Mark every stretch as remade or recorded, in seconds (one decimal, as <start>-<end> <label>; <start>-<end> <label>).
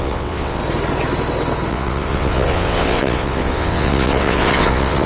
0.0-0.6 remade; 0.6-1.7 recorded; 1.7-5.1 remade